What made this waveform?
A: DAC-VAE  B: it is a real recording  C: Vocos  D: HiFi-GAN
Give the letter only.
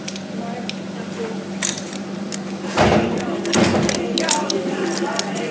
B